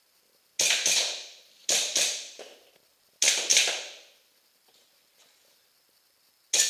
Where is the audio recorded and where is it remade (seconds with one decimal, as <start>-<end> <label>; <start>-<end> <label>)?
0.0-6.7 recorded